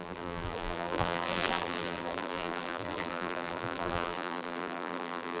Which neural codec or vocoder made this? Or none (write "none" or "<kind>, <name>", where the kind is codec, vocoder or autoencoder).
vocoder, BigVGAN v2